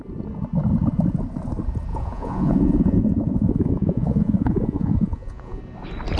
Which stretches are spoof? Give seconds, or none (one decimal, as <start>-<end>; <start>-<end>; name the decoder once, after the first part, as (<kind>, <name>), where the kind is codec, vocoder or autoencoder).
1.9-5.6 (vocoder, Vocos)